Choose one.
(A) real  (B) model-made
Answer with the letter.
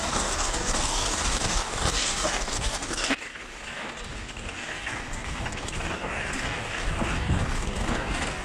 B